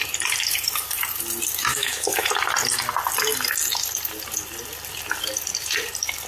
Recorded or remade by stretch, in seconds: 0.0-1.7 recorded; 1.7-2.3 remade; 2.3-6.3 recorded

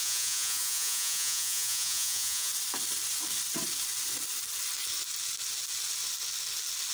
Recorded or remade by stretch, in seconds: 0.0-2.5 remade; 2.5-6.9 recorded

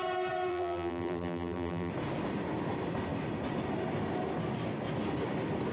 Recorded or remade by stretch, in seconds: 0.0-0.5 recorded; 0.5-1.9 remade; 1.9-5.7 recorded

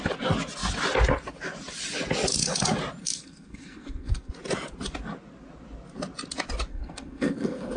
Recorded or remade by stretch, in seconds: 0.0-3.0 recorded; 3.0-4.3 remade; 4.3-6.7 recorded; 6.7-7.8 remade

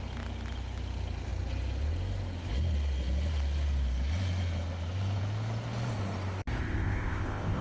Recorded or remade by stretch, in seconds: 0.0-6.6 recorded; 6.6-7.6 remade

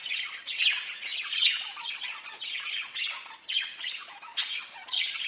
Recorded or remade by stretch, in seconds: 0.0-5.3 remade

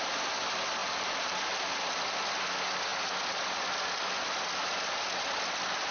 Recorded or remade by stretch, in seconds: 0.0-0.8 recorded; 0.8-1.5 remade; 1.5-5.9 recorded

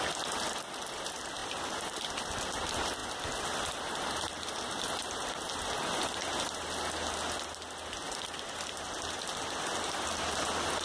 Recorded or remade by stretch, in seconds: 0.0-1.4 recorded; 1.4-2.1 remade; 2.1-10.8 recorded